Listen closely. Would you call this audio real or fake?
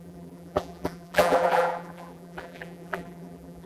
fake